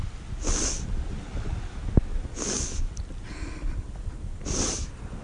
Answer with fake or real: real